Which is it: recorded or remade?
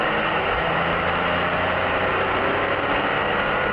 recorded